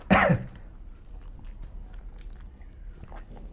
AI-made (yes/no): no